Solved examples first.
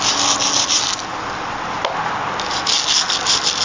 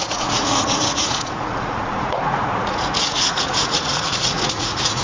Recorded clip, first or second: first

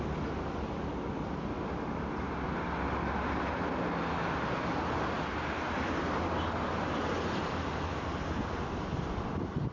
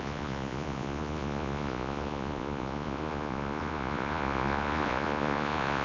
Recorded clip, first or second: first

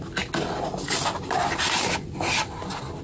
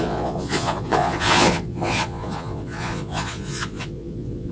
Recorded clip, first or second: first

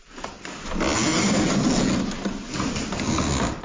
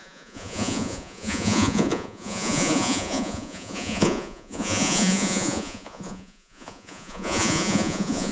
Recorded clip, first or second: first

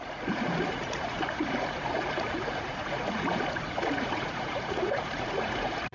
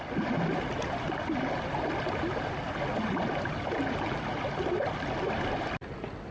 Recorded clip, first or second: second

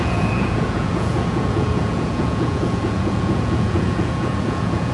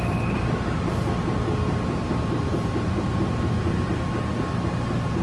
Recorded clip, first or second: second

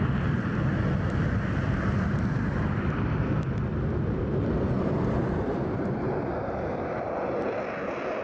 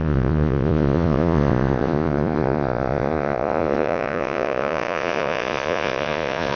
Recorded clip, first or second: first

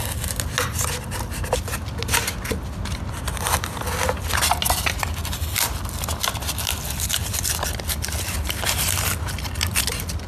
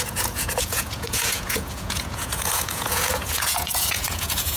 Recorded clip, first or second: first